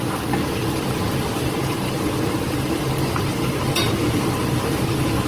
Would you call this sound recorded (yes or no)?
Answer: yes